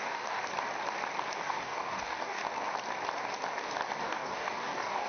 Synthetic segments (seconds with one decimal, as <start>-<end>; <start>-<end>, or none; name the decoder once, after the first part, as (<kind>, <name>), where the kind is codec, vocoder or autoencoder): 0.0-0.4 (codec, DAC); 1.4-2.4; 4.0-5.1